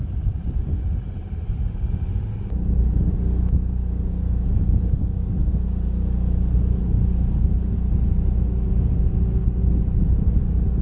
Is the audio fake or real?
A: real